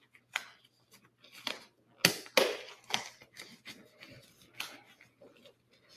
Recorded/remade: recorded